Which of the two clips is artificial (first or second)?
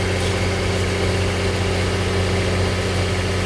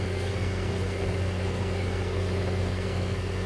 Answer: second